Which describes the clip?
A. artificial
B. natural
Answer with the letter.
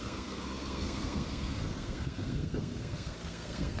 A